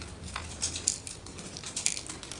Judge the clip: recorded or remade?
recorded